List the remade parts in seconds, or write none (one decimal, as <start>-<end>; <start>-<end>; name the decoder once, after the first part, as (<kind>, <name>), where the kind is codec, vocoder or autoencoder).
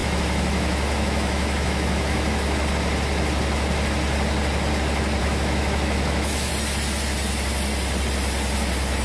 0.0-2.7 (autoencoder, DAC-VAE); 5.2-6.5